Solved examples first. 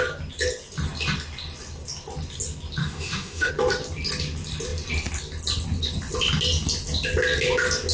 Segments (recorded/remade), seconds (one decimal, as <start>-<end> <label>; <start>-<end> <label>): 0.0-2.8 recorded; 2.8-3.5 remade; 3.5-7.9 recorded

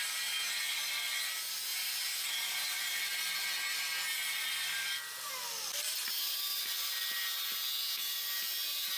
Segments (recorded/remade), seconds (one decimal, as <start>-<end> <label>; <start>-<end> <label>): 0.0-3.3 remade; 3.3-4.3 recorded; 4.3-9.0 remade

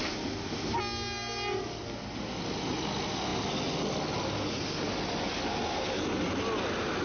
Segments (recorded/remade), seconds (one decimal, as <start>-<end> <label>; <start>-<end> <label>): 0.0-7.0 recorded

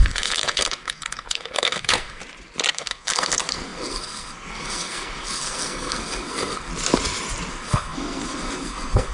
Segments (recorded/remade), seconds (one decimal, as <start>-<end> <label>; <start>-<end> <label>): 0.0-2.2 remade; 2.2-2.7 recorded; 2.7-6.7 remade; 6.7-7.5 recorded; 7.5-9.1 remade

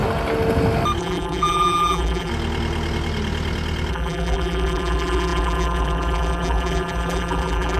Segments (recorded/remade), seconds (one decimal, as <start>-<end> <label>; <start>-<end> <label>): 0.0-1.0 recorded; 1.0-2.3 remade; 2.3-3.9 recorded; 3.9-7.8 remade

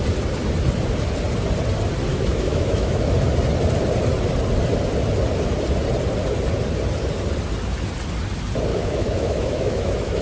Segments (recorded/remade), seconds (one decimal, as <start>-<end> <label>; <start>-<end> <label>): 0.0-2.1 recorded; 2.1-3.1 remade; 3.1-8.7 recorded; 8.7-10.2 remade